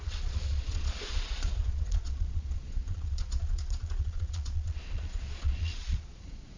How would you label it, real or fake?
fake